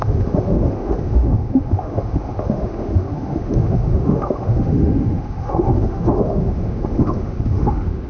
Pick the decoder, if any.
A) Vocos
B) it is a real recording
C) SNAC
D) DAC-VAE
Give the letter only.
D